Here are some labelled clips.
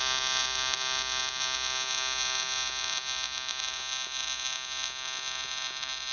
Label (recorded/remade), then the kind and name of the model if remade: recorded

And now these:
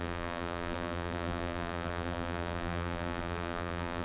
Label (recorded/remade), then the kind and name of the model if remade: remade, vocoder, BigVGAN v2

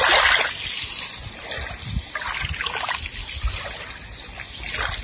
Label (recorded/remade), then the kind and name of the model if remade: recorded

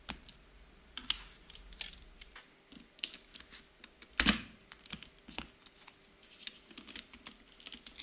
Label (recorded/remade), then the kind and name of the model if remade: recorded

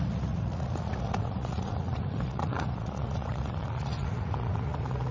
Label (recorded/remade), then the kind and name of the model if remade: remade, vocoder, Vocos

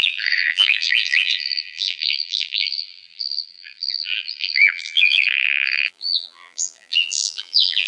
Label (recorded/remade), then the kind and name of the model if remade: remade, vocoder, BigVGAN v2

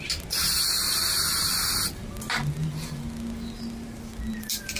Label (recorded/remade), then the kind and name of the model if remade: recorded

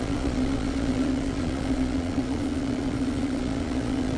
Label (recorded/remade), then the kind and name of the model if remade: remade, vocoder, Vocos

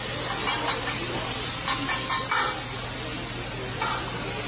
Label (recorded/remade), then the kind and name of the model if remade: recorded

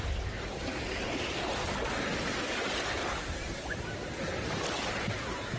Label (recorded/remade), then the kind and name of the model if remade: recorded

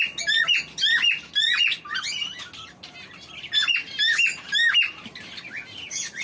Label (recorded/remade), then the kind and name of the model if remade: recorded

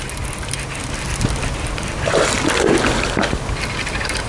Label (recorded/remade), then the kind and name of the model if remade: recorded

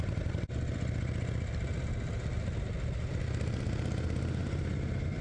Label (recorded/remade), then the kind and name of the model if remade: recorded